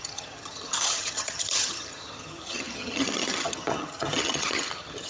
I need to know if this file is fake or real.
fake